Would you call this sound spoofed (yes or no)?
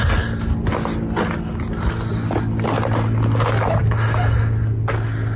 no